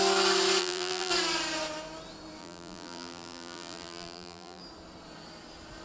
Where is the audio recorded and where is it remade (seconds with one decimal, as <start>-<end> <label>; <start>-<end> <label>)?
0.0-0.6 recorded; 0.6-1.1 remade; 1.1-2.4 recorded; 2.4-4.6 remade; 4.6-5.8 recorded